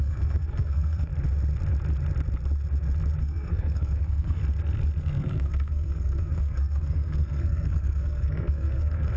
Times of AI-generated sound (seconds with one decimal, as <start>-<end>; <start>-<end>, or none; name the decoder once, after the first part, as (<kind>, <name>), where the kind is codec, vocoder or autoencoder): 0.0-1.1 (codec, SNAC); 3.2-4.4; 5.0-9.2